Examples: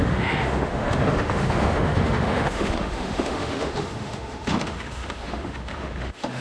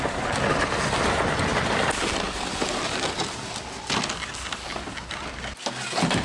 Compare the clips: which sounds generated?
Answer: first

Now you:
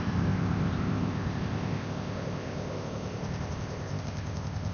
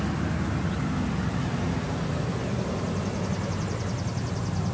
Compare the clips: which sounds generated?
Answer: first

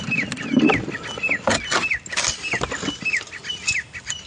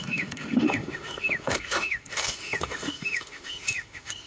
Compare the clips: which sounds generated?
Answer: second